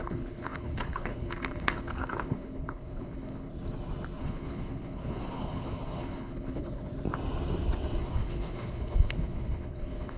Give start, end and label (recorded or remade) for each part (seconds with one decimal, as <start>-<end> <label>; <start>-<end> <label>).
0.0-3.5 remade; 3.5-4.2 recorded; 4.2-6.9 remade; 6.9-8.0 recorded; 8.0-10.2 remade